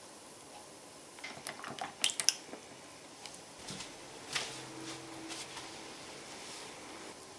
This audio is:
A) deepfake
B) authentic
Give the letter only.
B